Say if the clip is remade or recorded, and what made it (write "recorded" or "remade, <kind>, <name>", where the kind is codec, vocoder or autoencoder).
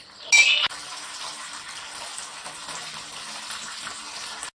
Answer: recorded